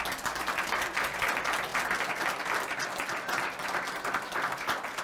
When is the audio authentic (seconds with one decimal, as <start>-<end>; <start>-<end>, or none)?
0.0-5.0